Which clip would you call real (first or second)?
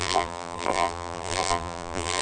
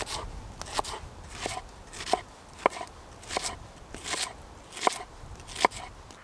second